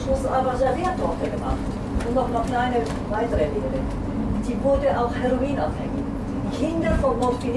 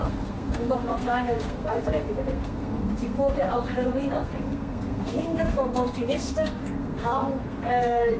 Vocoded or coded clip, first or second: second